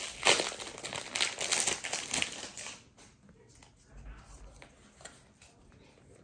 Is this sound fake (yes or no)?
no